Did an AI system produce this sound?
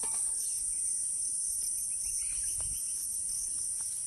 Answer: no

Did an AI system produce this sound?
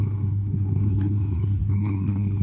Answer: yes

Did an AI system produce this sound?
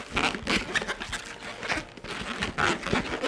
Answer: no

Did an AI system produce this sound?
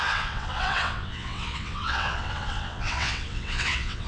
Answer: yes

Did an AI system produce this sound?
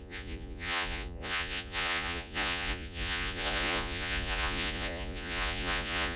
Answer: yes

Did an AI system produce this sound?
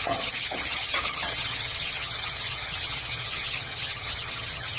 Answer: yes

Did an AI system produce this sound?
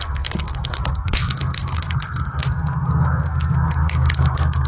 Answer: yes